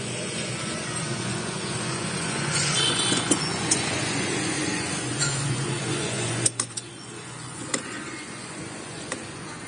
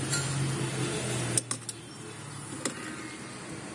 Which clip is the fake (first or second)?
first